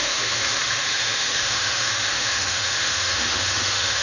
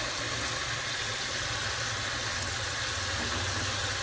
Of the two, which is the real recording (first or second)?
second